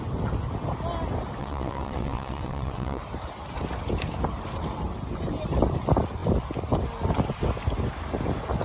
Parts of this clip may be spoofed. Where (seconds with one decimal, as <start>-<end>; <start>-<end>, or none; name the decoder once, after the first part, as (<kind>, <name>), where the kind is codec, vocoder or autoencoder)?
1.4-3.0 (vocoder, WaveNeXt)